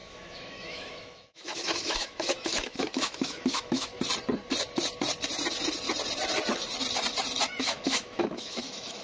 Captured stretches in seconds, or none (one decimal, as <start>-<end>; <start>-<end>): 3.9-7.6